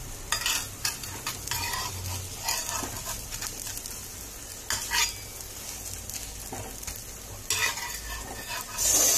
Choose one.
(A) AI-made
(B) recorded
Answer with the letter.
B